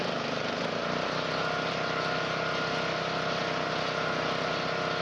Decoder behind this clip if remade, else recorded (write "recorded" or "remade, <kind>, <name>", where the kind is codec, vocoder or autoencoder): recorded